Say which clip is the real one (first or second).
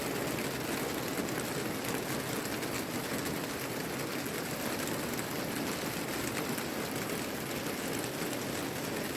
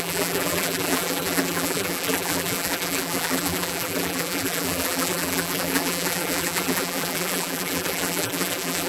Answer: first